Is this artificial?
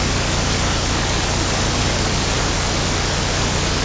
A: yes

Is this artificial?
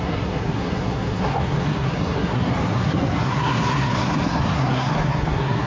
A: yes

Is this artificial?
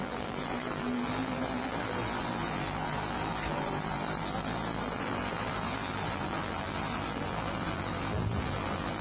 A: yes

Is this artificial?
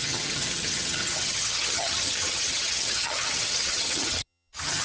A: yes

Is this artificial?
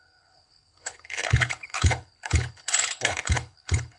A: yes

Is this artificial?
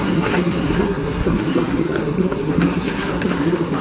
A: yes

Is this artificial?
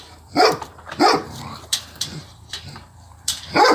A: yes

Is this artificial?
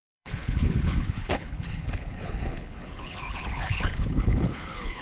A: yes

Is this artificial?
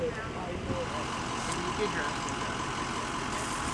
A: no